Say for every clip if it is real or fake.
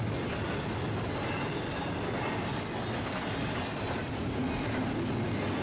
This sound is real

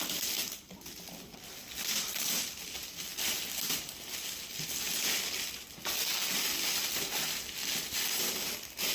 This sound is real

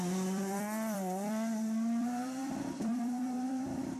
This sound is fake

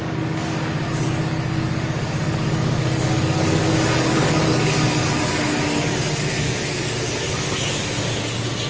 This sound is fake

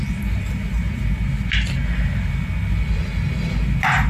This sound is real